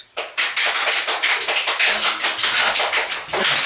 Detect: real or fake real